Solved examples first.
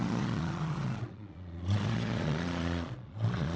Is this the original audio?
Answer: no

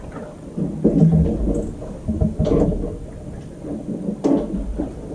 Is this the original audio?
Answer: yes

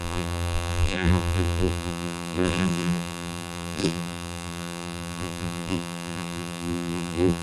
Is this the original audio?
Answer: no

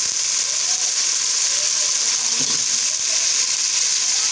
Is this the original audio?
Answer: yes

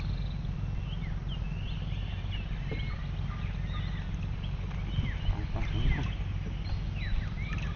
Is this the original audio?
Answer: yes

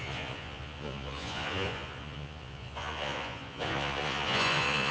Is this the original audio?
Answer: no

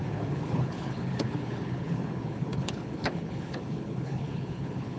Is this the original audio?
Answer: no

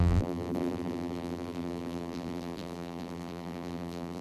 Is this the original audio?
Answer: no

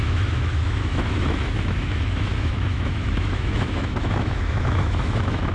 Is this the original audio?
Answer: no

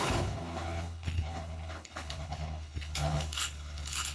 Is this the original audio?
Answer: no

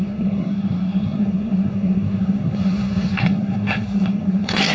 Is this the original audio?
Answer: no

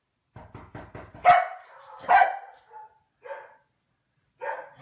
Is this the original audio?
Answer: yes